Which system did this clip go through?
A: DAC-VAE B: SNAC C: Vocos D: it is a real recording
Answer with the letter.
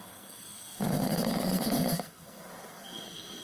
B